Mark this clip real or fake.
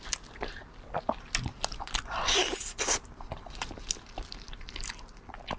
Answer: real